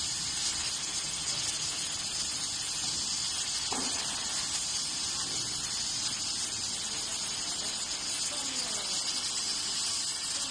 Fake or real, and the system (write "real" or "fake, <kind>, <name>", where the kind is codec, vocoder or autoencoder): real